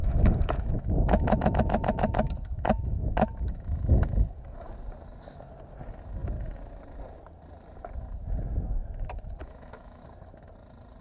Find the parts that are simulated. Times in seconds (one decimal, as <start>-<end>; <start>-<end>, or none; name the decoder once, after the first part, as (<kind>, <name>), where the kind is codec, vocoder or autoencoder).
0.0-4.7 (autoencoder, DAC-VAE); 9.4-10.0